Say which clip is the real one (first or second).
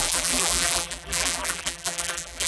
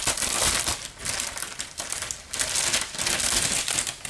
second